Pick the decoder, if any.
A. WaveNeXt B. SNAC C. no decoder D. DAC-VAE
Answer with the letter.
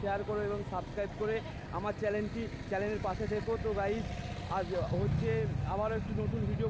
C